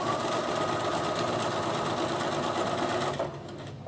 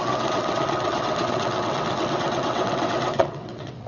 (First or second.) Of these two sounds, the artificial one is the second